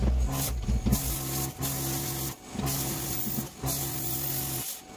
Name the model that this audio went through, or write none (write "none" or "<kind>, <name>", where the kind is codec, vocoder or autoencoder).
none